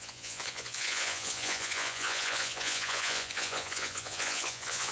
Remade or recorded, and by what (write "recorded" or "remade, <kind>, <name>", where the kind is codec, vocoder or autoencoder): remade, vocoder, Vocos